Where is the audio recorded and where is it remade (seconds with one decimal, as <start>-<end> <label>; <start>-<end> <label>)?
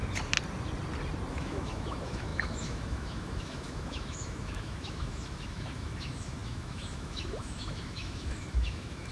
0.0-1.3 recorded; 1.3-9.1 remade